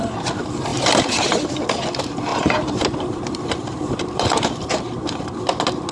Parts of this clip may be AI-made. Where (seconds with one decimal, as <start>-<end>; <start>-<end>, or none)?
0.7-1.5; 2.3-5.4